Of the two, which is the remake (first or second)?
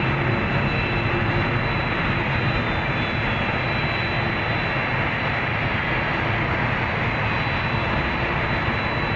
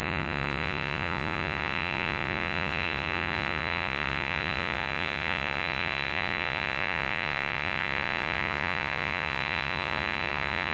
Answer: second